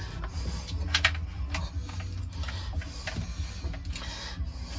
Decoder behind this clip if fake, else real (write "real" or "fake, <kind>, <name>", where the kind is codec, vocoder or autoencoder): real